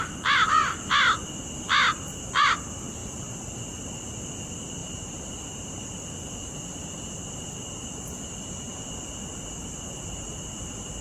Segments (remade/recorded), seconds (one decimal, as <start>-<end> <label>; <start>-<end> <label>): 0.0-11.0 recorded